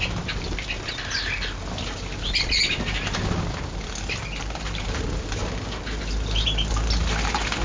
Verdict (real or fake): real